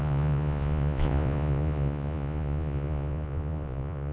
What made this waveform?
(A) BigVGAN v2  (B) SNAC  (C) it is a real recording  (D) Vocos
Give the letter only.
D